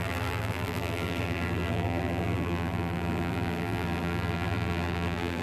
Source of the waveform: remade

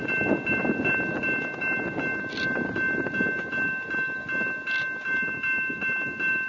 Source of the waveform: recorded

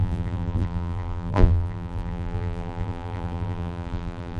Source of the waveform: remade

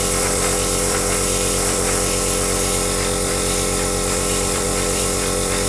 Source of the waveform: remade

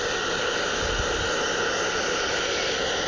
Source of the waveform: recorded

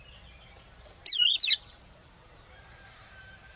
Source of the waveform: remade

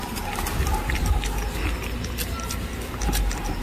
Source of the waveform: recorded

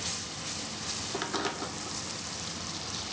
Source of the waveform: remade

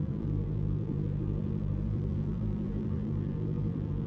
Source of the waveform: remade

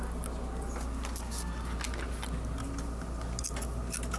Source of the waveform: recorded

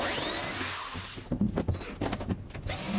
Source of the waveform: recorded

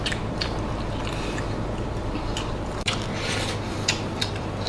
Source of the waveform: remade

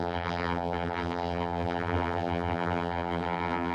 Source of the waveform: remade